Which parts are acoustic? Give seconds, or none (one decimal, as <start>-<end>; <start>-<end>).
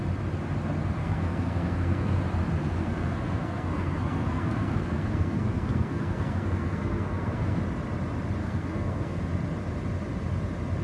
0.0-1.0; 2.2-2.6; 7.6-8.4; 9.2-10.8